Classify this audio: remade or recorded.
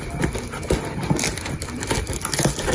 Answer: recorded